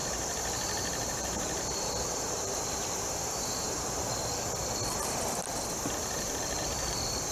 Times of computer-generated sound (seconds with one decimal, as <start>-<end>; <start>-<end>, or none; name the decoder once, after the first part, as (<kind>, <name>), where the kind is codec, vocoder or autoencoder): 0.0-4.3 (vocoder, BigVGAN v2); 6.0-7.3